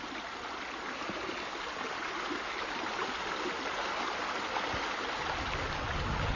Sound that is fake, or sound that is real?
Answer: real